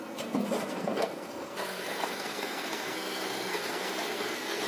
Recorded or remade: remade